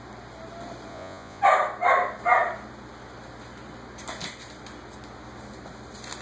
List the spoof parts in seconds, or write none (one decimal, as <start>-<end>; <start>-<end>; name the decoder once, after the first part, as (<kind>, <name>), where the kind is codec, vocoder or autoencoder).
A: 0.9-1.4 (vocoder, Vocos)